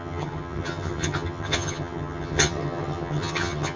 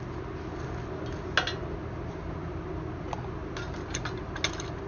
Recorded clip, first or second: second